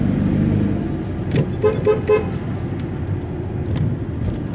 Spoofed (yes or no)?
no